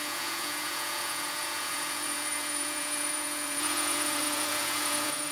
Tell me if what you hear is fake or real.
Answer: fake